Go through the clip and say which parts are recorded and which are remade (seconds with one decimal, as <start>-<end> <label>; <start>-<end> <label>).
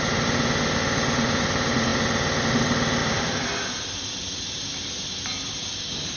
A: 0.0-3.0 recorded; 3.0-5.7 remade; 5.7-6.2 recorded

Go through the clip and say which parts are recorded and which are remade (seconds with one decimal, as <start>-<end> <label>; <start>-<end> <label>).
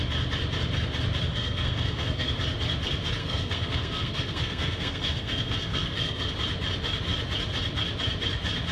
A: 0.0-1.3 recorded; 1.3-2.3 remade; 2.3-3.2 recorded; 3.2-6.3 remade; 6.3-8.7 recorded